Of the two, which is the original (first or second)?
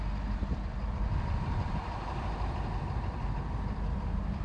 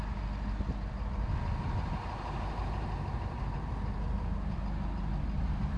second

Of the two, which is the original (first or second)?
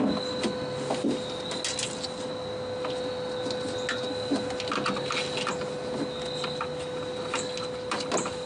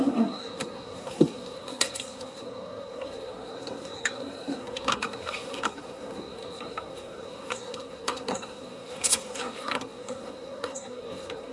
first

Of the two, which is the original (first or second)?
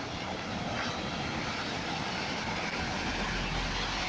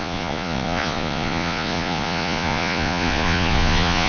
first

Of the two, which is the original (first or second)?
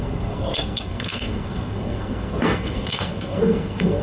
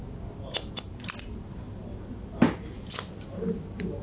second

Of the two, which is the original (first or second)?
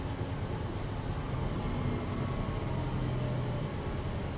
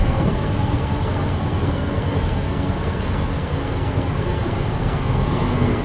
first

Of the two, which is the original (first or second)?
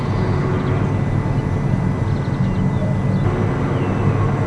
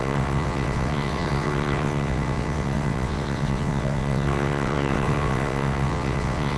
first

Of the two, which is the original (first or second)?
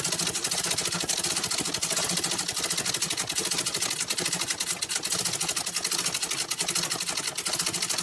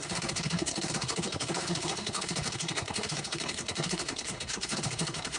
first